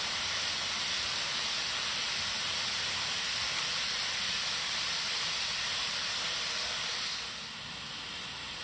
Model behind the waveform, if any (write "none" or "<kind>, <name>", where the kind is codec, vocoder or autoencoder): none